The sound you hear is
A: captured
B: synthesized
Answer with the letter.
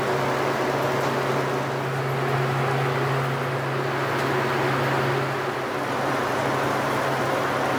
A